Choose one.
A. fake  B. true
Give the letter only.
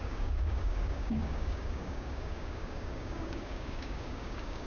A